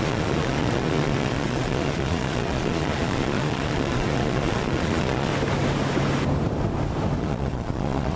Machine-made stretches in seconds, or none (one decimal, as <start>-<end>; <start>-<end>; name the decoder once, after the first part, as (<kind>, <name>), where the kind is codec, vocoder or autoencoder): 0.0-5.3 (vocoder, Vocos); 7.2-8.2